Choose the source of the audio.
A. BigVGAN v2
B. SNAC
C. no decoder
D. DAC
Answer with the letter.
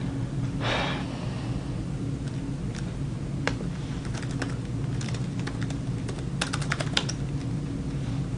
C